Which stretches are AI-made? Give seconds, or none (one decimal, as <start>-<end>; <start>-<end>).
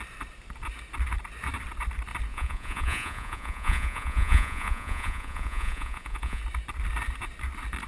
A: 2.3-6.4